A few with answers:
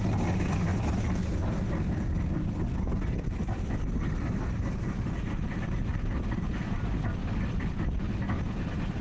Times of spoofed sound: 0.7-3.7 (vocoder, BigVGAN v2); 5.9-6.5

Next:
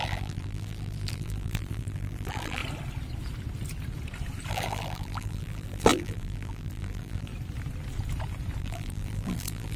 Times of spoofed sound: 0.0-2.6 (vocoder, BigVGAN v2); 4.5-7.3; 8.6-9.8

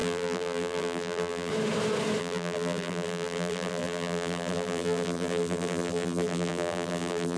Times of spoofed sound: 0.0-1.5 (vocoder, BigVGAN v2); 2.2-7.4

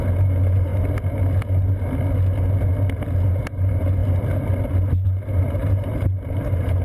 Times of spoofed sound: 0.0-0.7 (vocoder, BigVGAN v2); 3.3-4.0; 5.4-6.8

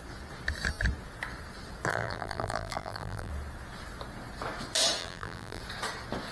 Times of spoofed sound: 1.9-3.3 (vocoder, BigVGAN v2); 5.0-5.6

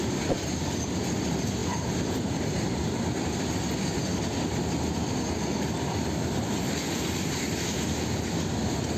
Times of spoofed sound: 1.6-2.9 (vocoder, BigVGAN v2)